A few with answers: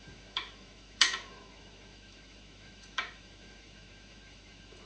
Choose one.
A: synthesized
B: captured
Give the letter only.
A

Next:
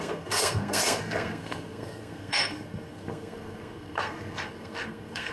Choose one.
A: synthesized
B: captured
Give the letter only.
A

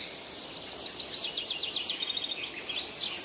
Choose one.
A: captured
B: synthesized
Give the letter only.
A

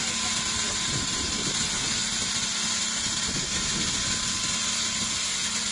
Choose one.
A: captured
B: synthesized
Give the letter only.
A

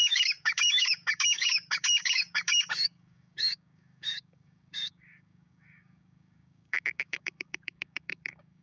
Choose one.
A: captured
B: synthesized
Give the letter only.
B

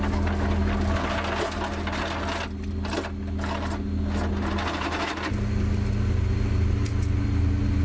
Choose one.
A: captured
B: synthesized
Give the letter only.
A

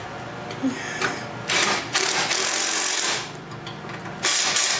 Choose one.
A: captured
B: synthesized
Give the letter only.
A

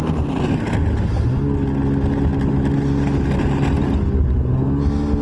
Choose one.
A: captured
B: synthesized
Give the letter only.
A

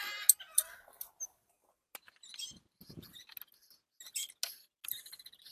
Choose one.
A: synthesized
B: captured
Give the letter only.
B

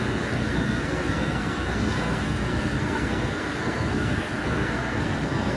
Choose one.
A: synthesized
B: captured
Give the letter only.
A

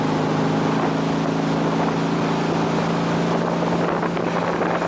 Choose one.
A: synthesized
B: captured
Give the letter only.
B